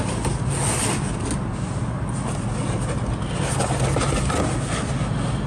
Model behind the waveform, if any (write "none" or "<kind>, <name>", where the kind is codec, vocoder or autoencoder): none